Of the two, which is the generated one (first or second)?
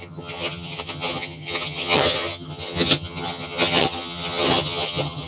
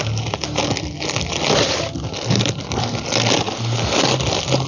first